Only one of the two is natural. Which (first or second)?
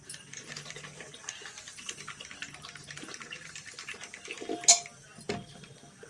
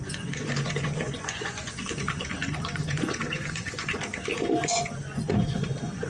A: first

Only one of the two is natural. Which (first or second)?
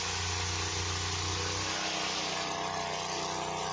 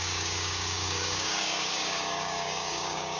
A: first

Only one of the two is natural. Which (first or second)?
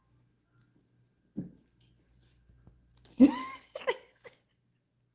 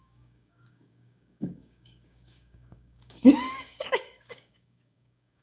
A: first